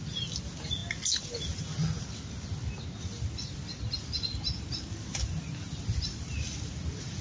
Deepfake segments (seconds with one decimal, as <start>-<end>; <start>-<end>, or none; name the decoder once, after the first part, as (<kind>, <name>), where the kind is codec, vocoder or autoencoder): none